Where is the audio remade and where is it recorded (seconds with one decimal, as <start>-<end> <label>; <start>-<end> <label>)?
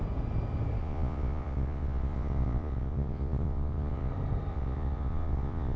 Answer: 0.0-0.8 recorded; 0.8-4.1 remade; 4.1-4.5 recorded; 4.5-5.8 remade